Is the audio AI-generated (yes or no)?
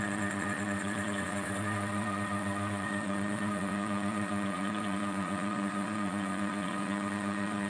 yes